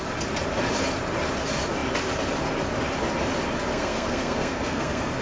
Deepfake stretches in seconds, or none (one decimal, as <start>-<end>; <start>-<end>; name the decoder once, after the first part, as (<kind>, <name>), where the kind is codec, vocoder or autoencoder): 3.7-5.2 (codec, SNAC)